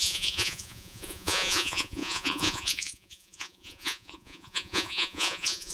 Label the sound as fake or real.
fake